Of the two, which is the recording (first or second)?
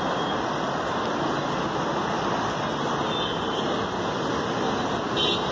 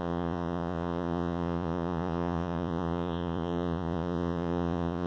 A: first